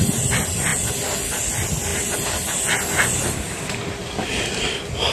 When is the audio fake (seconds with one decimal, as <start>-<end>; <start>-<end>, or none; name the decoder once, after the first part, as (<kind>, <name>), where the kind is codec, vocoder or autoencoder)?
none